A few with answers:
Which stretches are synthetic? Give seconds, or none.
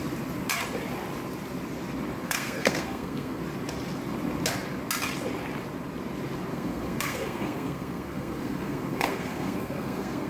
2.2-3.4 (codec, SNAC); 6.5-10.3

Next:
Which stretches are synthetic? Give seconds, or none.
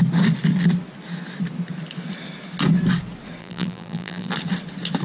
3.4-4.3 (vocoder, BigVGAN v2)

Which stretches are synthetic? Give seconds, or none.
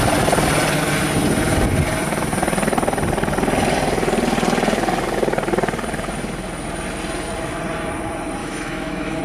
8.4-9.2 (autoencoder, DAC-VAE)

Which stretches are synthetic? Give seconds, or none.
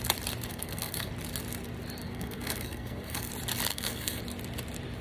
0.5-1.1 (codec, SNAC); 2.0-3.3; 3.7-4.2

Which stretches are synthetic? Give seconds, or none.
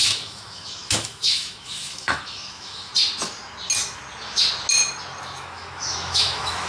0.0-2.9 (autoencoder, DAC-VAE); 5.2-6.7